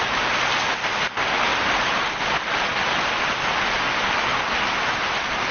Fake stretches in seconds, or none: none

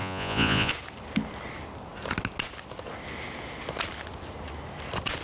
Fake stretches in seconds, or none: 0.0-0.7

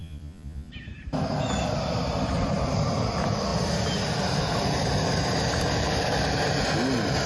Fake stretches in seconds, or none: 0.0-0.7

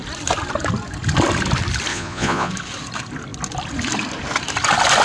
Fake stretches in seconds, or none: 1.9-2.5